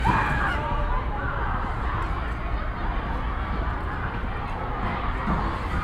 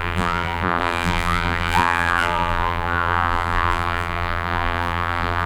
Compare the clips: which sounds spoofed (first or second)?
second